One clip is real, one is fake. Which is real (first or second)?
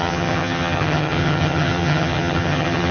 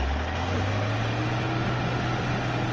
second